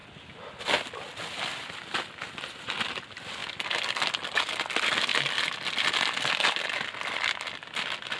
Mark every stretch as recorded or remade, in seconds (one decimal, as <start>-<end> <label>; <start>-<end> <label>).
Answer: 0.0-8.2 recorded